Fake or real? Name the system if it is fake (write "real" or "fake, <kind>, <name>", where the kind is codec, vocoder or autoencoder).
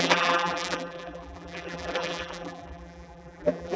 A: fake, vocoder, BigVGAN v2